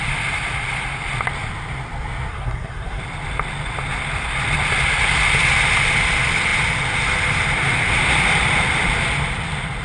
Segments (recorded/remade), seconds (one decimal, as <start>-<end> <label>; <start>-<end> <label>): 0.0-2.3 recorded; 2.3-3.0 remade; 3.0-9.8 recorded